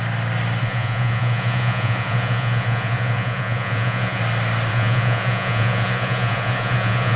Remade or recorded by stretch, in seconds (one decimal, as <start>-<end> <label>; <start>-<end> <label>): 0.0-0.6 recorded; 0.6-4.2 remade; 4.2-4.7 recorded; 4.7-7.2 remade